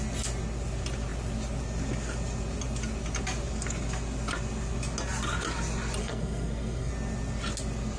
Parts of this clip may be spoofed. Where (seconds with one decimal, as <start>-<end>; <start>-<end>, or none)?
6.0-6.9